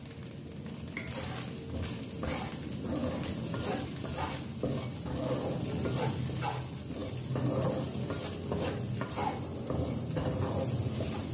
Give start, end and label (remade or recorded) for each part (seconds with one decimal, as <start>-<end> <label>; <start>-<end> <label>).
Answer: 0.0-11.3 recorded